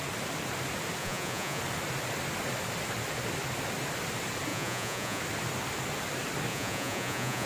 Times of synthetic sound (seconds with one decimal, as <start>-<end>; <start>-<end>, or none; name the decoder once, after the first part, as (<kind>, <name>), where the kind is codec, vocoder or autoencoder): 1.0-1.6 (vocoder, Vocos); 4.5-5.2; 6.5-7.5